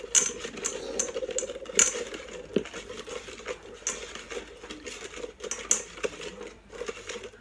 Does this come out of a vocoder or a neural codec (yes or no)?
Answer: no